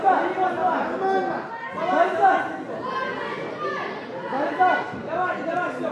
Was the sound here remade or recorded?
recorded